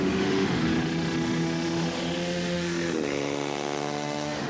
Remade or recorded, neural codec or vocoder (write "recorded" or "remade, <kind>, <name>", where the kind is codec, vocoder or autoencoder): remade, autoencoder, DAC-VAE